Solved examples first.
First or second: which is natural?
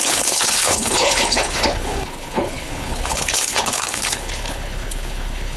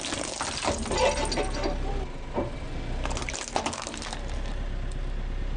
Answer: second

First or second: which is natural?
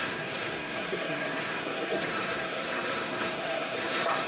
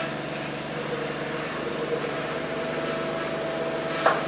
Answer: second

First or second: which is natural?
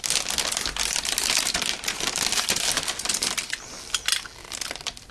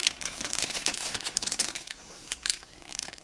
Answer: first